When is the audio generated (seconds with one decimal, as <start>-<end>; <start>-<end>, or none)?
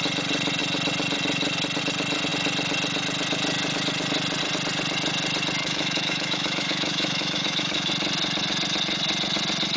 5.6-7.9